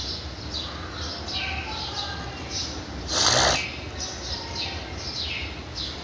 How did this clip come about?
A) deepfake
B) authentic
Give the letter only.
B